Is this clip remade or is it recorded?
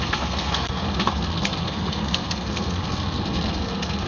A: remade